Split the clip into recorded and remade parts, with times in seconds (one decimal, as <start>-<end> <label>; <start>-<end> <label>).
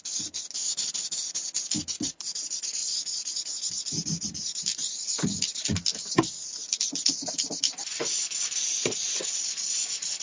0.0-10.2 recorded